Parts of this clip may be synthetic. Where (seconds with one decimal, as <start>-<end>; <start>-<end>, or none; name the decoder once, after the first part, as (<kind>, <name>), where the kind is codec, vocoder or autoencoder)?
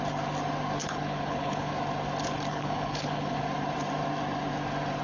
0.8-1.7 (codec, HILCodec); 2.5-3.4